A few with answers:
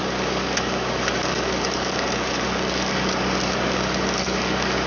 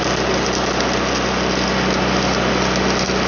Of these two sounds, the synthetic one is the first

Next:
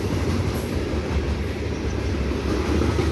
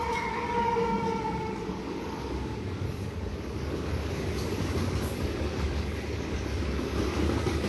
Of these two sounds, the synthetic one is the second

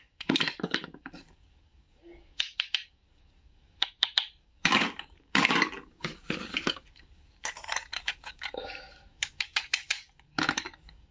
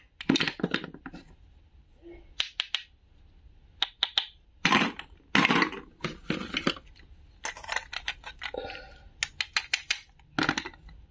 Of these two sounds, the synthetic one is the first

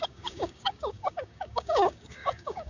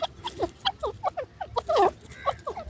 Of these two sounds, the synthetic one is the first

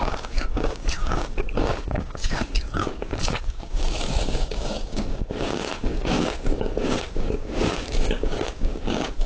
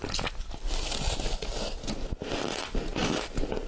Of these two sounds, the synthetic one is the first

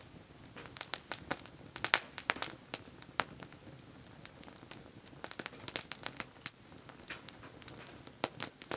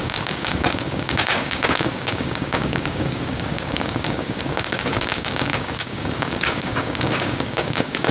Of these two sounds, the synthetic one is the second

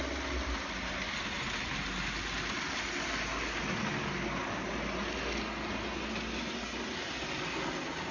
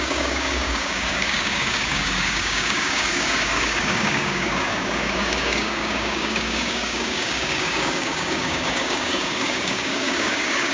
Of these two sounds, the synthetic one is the second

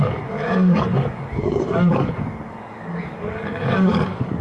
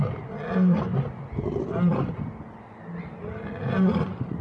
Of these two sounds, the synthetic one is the first